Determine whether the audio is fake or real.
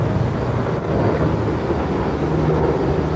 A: real